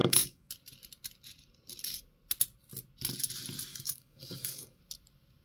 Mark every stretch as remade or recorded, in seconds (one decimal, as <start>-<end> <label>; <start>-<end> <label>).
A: 0.0-0.5 remade; 0.5-3.7 recorded; 3.7-4.8 remade; 4.8-5.4 recorded